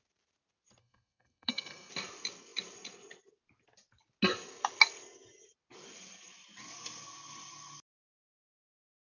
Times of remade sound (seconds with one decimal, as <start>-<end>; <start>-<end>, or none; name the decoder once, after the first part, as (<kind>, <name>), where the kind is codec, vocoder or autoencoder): 0.8-1.9 (codec, SNAC)